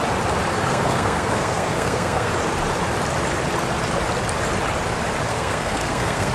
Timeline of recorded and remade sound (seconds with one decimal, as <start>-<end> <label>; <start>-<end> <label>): 0.0-0.7 recorded; 0.7-2.3 remade; 2.3-5.3 recorded; 5.3-6.3 remade